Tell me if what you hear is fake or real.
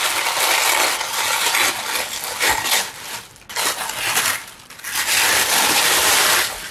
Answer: real